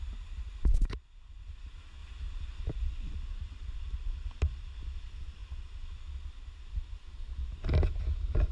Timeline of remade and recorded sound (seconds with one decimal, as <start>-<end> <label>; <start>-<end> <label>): 0.0-8.5 recorded